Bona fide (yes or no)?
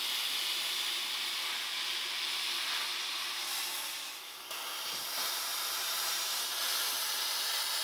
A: no